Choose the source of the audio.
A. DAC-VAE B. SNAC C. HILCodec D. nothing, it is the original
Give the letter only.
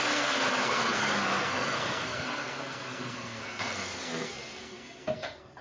B